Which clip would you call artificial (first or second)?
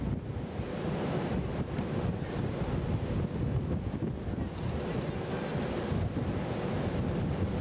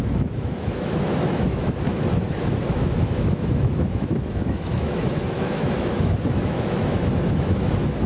second